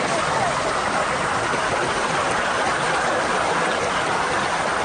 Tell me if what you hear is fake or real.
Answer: real